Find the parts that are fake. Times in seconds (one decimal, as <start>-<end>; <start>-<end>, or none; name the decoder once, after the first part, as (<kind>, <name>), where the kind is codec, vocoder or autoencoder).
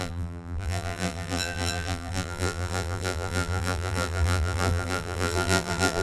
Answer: 0.0-6.0 (vocoder, BigVGAN v2)